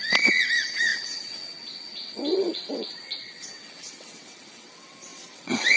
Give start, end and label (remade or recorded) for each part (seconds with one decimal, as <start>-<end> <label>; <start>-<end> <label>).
0.0-5.8 remade